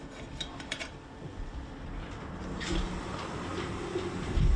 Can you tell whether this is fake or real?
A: real